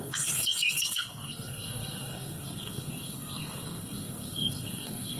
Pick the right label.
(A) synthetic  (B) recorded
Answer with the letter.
A